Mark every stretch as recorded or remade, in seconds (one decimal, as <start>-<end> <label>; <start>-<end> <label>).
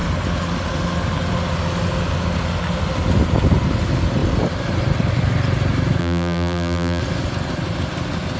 0.0-6.0 recorded; 6.0-7.0 remade; 7.0-8.4 recorded